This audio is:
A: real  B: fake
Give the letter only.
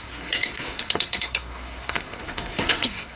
B